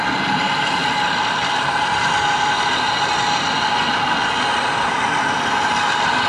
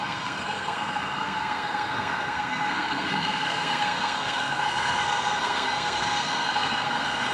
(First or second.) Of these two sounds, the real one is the first